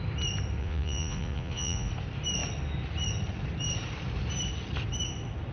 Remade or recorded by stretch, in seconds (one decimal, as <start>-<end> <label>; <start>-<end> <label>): 0.0-0.6 recorded; 0.6-1.9 remade; 1.9-5.5 recorded